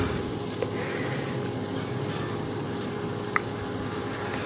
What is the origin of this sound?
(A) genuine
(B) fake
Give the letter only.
B